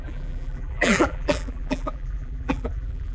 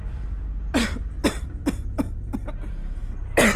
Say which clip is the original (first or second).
second